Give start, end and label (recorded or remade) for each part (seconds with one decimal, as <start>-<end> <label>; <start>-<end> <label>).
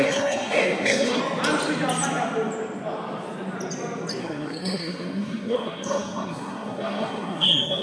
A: 0.0-1.2 remade; 1.2-4.2 recorded; 4.2-7.8 remade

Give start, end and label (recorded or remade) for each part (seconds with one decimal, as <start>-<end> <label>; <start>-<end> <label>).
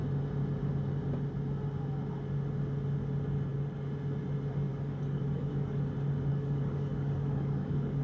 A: 0.0-4.7 recorded; 4.7-5.8 remade; 5.8-6.3 recorded; 6.3-8.0 remade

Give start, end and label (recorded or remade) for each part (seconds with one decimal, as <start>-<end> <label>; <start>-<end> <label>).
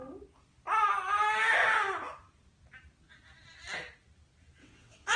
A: 0.0-4.6 recorded; 4.6-5.2 remade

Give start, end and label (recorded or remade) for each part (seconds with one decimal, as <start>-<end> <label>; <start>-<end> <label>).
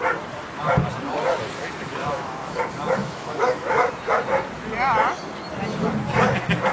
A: 0.0-2.0 recorded; 2.0-2.6 remade; 2.6-3.0 recorded; 3.0-3.9 remade; 3.9-6.7 recorded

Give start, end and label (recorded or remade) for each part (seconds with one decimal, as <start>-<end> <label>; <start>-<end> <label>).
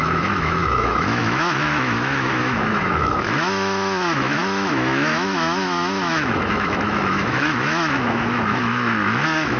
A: 0.0-9.6 remade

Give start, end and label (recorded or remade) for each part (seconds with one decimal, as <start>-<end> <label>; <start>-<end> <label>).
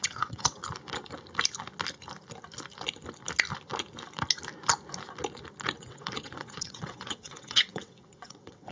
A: 0.0-0.6 remade; 0.6-5.8 recorded; 5.8-8.7 remade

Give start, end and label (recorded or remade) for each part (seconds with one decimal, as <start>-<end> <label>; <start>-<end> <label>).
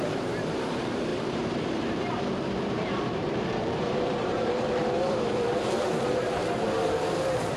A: 0.0-6.4 remade; 6.4-7.6 recorded